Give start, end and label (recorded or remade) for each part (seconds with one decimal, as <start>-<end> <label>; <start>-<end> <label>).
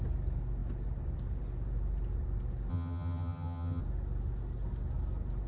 0.0-2.7 recorded; 2.7-3.8 remade; 3.8-5.5 recorded